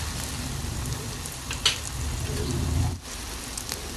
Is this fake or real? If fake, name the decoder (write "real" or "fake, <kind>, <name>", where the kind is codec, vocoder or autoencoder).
real